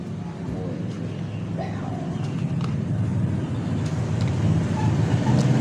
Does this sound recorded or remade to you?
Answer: recorded